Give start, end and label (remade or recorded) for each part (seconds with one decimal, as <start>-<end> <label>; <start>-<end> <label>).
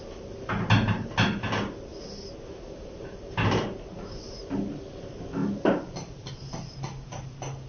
0.0-7.7 recorded